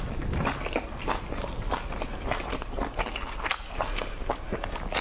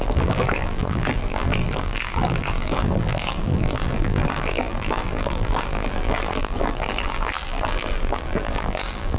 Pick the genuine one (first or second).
first